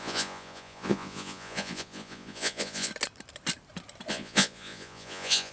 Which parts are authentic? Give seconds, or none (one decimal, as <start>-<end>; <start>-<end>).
2.9-4.1